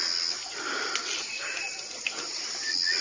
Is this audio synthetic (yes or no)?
no